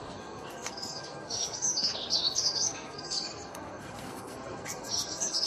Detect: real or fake fake